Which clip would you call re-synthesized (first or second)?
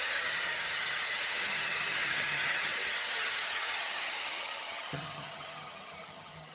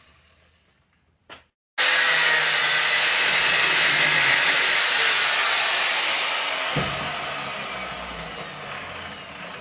first